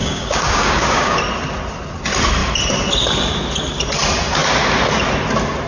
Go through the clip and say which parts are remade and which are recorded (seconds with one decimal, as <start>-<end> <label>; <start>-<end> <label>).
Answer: 0.0-1.2 remade; 1.2-5.7 recorded